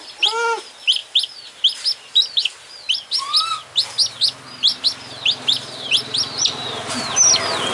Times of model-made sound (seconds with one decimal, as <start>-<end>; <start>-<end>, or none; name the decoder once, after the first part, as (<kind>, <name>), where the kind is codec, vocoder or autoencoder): none